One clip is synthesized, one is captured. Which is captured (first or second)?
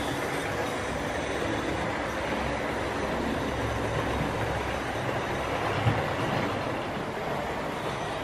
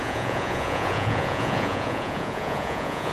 first